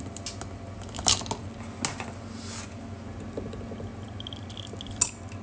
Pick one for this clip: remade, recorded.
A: recorded